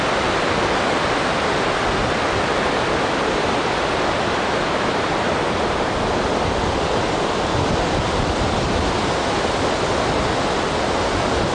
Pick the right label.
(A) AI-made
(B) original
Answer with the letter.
B